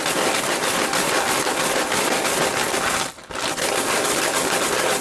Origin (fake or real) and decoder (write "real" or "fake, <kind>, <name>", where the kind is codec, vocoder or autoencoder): real